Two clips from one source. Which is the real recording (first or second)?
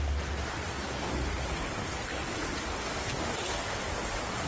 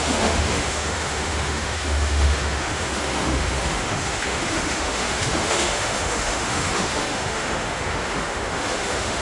first